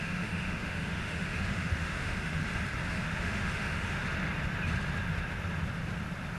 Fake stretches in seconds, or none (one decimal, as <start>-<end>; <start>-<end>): 0.0-2.4; 2.9-4.0

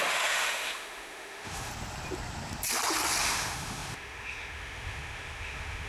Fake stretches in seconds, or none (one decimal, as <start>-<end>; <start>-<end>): 0.0-1.7; 3.2-5.9